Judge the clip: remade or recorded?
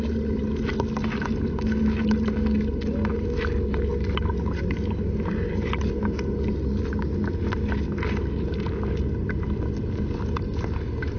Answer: recorded